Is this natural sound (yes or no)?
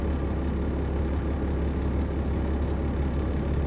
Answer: yes